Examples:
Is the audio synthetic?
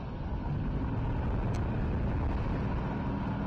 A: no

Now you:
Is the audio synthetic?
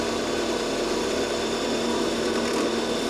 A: yes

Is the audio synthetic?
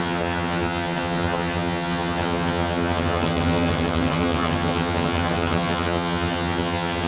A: yes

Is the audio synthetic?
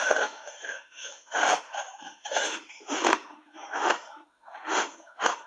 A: yes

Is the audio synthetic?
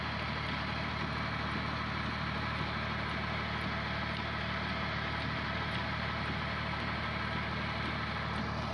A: no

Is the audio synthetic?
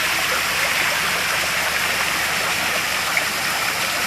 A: yes